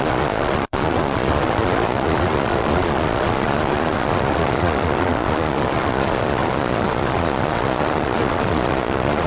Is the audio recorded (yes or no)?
no